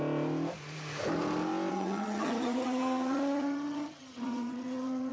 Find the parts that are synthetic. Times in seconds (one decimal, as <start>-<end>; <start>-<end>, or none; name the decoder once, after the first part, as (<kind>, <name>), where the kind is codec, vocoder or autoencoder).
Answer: 1.7-5.1 (vocoder, HiFi-GAN)